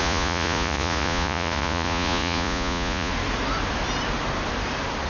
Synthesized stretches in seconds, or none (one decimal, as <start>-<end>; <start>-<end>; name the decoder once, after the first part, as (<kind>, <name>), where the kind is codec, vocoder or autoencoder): 0.0-3.1 (vocoder, Vocos)